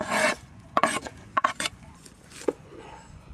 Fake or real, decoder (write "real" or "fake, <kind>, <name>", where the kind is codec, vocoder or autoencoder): fake, vocoder, Vocos